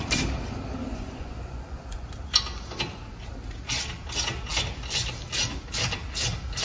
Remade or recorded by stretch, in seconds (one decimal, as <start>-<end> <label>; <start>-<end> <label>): 0.0-0.9 recorded; 0.9-2.1 remade; 2.1-6.6 recorded